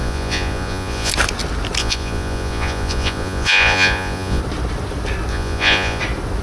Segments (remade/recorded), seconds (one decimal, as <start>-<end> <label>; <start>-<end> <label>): 0.0-1.1 remade; 1.1-1.8 recorded; 1.8-4.4 remade; 4.4-5.3 recorded; 5.3-6.0 remade; 6.0-6.4 recorded